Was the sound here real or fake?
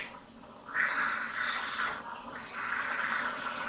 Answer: real